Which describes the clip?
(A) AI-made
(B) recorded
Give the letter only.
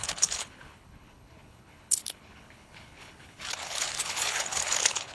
A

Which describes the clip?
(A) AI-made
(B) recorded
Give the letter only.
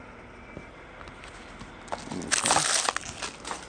B